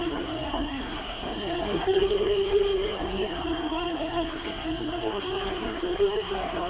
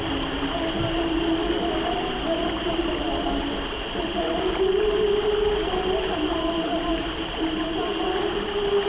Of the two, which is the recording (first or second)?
second